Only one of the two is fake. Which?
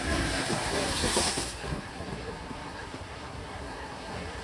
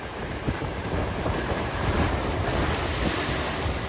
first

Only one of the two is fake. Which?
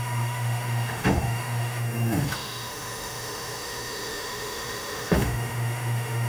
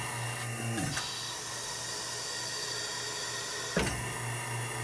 first